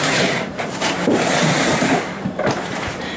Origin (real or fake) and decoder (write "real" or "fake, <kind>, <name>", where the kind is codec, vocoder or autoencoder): fake, vocoder, BigVGAN v2